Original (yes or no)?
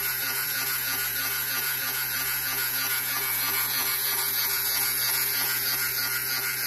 no